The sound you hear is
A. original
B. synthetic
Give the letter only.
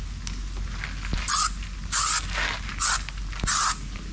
A